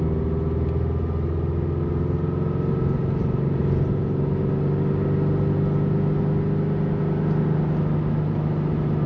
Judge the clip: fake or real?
real